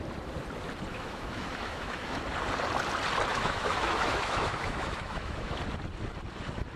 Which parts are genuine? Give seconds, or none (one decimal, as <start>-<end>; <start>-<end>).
0.0-0.9; 2.2-3.3; 5.6-6.8